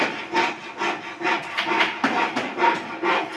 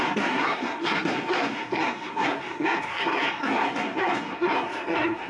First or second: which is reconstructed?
second